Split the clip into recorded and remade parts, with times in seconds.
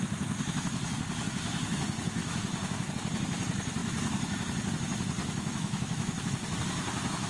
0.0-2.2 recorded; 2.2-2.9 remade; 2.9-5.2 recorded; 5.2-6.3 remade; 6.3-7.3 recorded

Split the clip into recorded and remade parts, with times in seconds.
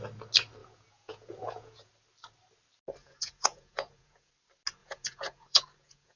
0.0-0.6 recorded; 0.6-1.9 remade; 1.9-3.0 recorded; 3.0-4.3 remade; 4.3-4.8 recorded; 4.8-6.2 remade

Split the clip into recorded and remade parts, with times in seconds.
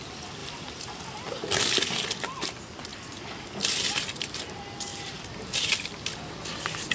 0.0-0.4 recorded; 0.4-1.7 remade; 1.7-4.9 recorded; 4.9-6.0 remade; 6.0-6.9 recorded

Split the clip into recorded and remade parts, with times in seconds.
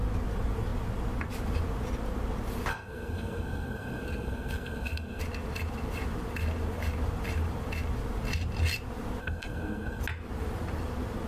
0.0-2.7 recorded; 2.7-5.2 remade; 5.2-9.2 recorded; 9.2-10.0 remade; 10.0-11.3 recorded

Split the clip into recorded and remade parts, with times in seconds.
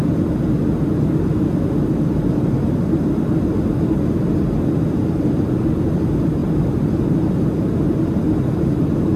0.0-6.4 recorded; 6.4-7.4 remade; 7.4-9.2 recorded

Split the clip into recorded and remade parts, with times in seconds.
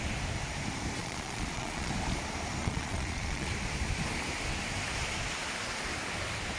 0.0-1.0 recorded; 1.0-1.9 remade; 1.9-2.6 recorded; 2.6-3.5 remade; 3.5-6.6 recorded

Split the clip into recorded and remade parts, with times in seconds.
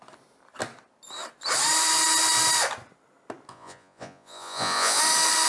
0.0-3.5 recorded; 3.5-5.0 remade; 5.0-5.5 recorded